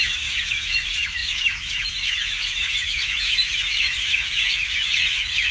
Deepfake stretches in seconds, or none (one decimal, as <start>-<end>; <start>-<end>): 0.0-5.5

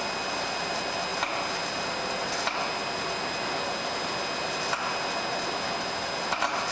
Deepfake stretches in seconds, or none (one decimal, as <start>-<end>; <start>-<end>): none

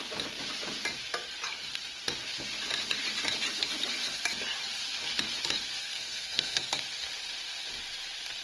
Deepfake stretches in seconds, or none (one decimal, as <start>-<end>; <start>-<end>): 5.8-6.8